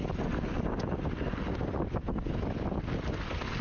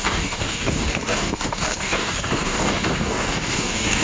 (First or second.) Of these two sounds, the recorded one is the first